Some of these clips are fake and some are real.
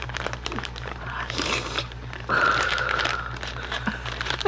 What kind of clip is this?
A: fake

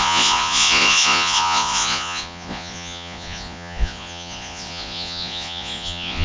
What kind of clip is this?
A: fake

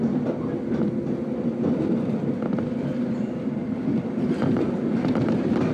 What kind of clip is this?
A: real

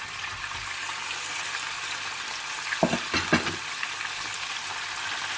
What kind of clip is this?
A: real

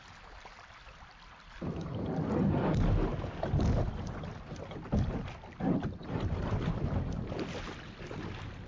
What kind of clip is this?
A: real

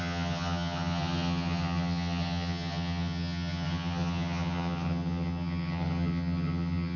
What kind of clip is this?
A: fake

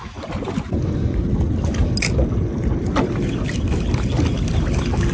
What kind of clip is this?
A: real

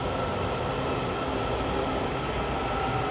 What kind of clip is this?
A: real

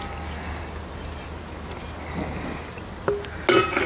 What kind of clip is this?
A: real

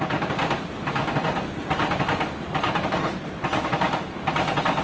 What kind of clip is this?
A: real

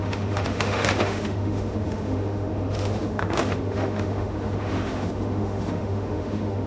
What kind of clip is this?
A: fake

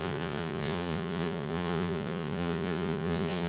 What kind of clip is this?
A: fake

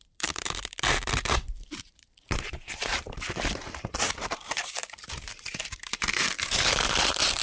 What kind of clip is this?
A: fake